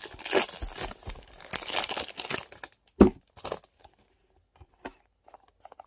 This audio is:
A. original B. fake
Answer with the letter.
A